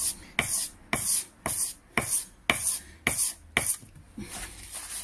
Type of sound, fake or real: real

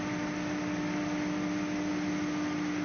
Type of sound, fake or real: real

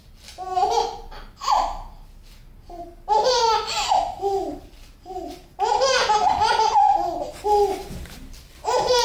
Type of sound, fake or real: real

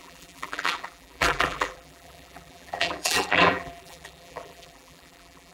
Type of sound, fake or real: fake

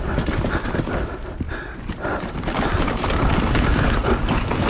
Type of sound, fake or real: fake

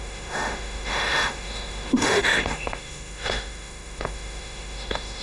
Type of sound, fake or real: fake